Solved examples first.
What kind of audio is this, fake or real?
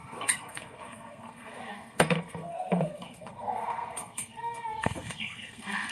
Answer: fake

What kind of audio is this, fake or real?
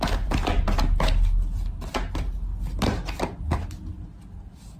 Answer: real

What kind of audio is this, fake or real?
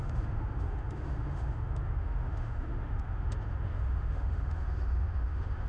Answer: fake